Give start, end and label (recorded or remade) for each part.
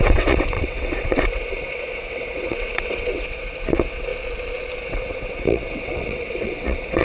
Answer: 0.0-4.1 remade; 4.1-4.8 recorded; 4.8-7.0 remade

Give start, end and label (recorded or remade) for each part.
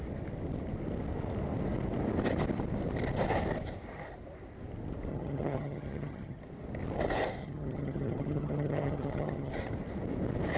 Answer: 0.0-5.1 recorded; 5.1-6.4 remade; 6.4-7.4 recorded; 7.4-9.5 remade; 9.5-10.6 recorded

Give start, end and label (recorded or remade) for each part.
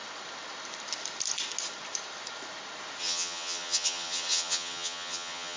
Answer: 0.0-3.0 recorded; 3.0-5.6 remade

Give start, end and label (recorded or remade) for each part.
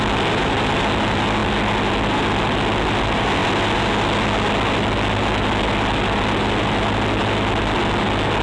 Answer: 0.0-8.4 recorded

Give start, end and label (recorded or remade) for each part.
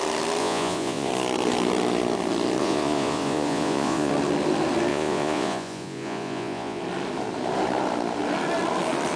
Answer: 0.0-0.4 recorded; 0.4-1.1 remade; 1.1-2.6 recorded; 2.6-4.1 remade; 4.1-4.9 recorded; 4.9-6.8 remade; 6.8-9.2 recorded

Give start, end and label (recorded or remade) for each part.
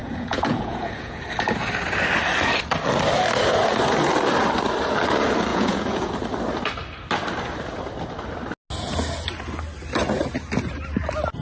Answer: 0.0-1.2 remade; 1.2-5.5 recorded; 5.5-6.1 remade; 6.1-11.4 recorded